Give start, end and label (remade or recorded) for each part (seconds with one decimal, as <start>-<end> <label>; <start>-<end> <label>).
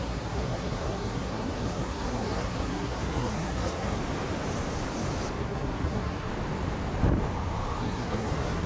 0.0-4.0 remade; 4.0-5.4 recorded; 5.4-6.3 remade; 6.3-7.8 recorded; 7.8-8.7 remade